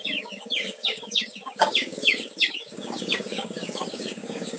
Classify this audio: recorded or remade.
remade